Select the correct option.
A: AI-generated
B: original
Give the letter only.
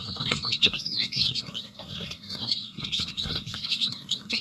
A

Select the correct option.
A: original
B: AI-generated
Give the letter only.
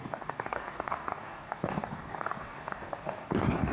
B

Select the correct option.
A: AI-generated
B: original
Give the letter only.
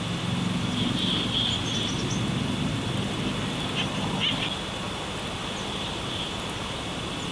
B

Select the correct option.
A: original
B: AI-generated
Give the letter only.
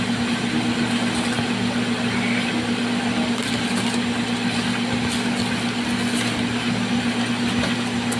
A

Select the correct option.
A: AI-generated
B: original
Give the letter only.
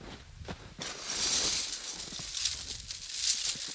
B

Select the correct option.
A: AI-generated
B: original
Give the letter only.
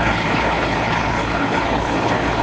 A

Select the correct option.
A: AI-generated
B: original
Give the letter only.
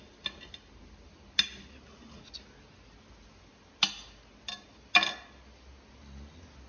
B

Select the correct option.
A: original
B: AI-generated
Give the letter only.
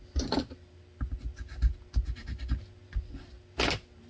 A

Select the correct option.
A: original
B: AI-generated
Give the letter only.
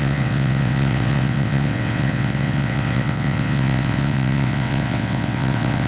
B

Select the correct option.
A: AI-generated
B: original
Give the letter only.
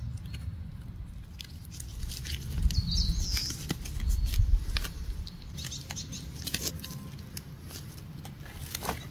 B